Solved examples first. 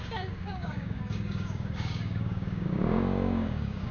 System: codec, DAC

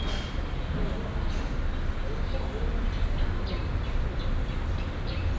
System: none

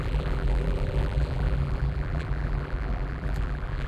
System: vocoder, BigVGAN v2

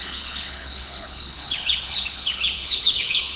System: codec, HILCodec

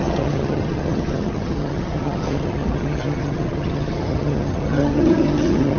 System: vocoder, HiFi-GAN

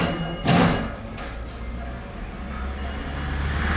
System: none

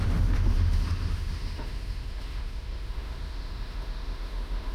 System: autoencoder, DAC-VAE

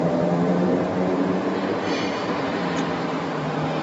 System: vocoder, BigVGAN v2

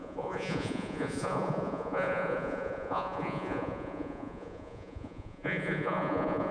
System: vocoder, Vocos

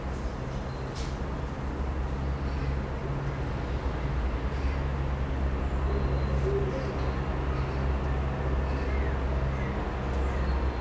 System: none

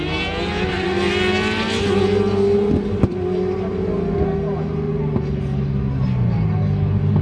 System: none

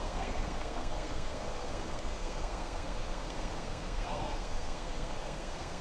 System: codec, SNAC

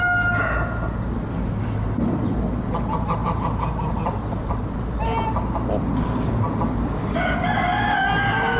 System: none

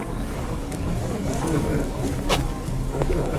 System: codec, DAC